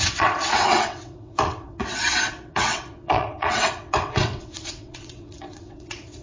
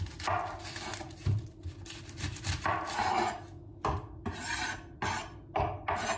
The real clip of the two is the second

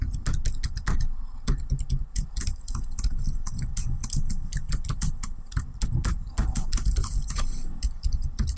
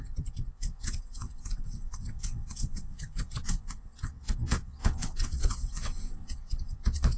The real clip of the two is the first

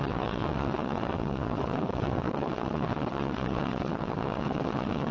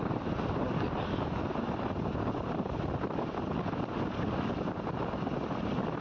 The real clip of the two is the second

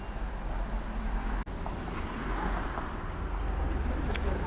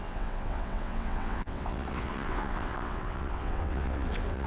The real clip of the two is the first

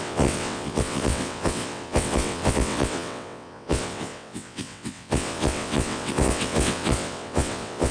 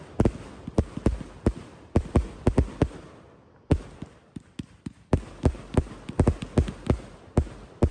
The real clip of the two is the second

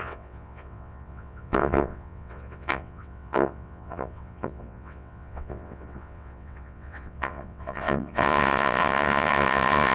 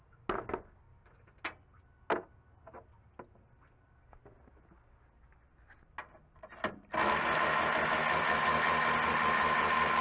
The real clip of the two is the second